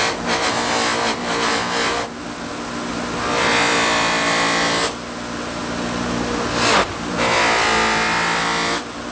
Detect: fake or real real